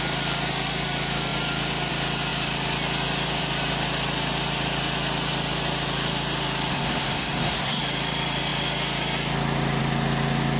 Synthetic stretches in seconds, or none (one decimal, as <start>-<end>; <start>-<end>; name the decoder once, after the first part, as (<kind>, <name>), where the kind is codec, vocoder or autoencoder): 6.7-7.8 (codec, SNAC)